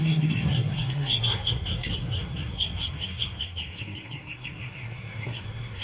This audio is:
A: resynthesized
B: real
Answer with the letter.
A